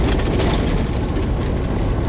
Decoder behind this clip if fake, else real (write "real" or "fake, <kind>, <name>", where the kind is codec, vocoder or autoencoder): real